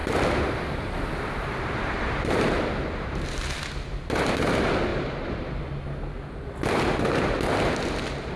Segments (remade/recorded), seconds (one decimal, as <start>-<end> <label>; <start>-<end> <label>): 0.0-4.5 remade; 4.5-4.9 recorded; 4.9-5.6 remade; 5.6-8.4 recorded